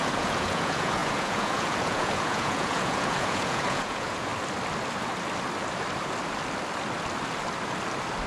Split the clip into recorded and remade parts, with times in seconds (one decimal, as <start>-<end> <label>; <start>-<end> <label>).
0.0-4.3 remade; 4.3-8.3 recorded